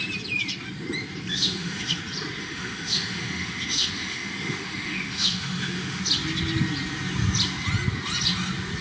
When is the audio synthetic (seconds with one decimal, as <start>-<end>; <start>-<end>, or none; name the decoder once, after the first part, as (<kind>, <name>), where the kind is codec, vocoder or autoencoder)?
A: 1.3-2.0 (autoencoder, DAC-VAE); 2.4-6.0